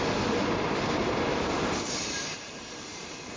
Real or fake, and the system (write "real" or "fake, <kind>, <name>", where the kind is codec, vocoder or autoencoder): fake, vocoder, BigVGAN v2